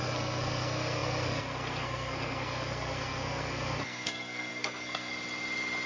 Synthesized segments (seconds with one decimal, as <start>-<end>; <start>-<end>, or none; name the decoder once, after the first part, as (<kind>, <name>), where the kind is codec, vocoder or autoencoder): 0.0-5.1 (codec, SNAC)